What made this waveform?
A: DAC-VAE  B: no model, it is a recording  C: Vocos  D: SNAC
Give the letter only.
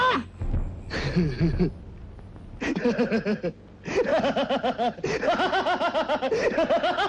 B